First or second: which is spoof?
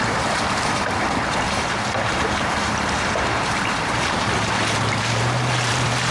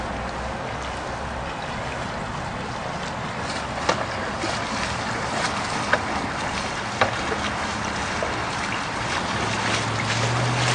first